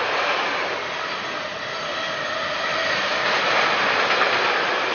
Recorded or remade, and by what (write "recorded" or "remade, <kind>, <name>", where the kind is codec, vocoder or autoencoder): recorded